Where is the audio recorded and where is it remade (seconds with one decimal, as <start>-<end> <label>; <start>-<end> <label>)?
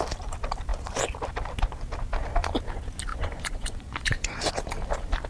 0.0-3.1 recorded; 3.1-4.5 remade; 4.5-5.3 recorded